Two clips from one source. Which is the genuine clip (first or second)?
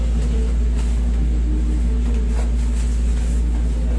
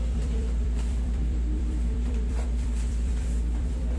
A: first